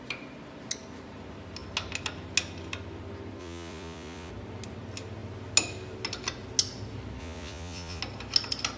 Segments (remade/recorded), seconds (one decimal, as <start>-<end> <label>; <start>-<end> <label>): 0.0-3.4 recorded; 3.4-4.3 remade; 4.3-7.2 recorded; 7.2-8.0 remade; 8.0-8.8 recorded

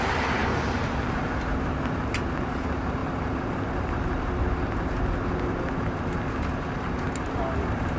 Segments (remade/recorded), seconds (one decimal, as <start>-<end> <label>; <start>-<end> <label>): 0.0-8.0 recorded